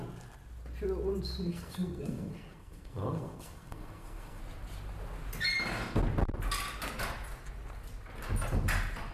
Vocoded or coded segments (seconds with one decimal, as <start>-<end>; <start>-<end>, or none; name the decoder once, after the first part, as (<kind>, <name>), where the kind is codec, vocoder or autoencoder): 1.5-4.4 (codec, SNAC)